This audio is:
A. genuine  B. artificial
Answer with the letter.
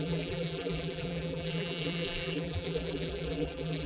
B